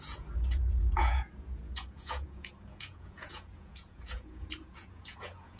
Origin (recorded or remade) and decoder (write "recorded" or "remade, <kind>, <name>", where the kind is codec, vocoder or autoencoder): remade, vocoder, Vocos